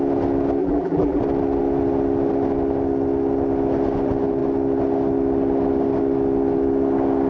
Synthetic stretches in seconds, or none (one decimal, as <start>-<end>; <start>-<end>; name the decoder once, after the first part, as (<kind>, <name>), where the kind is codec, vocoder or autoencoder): 0.6-1.2 (vocoder, BigVGAN v2)